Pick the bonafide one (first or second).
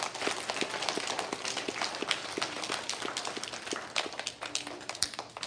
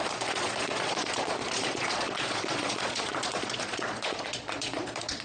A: first